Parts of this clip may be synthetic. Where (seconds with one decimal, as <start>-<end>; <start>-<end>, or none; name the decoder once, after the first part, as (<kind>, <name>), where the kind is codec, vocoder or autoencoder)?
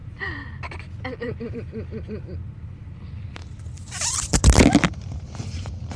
0.0-6.0 (vocoder, BigVGAN v2)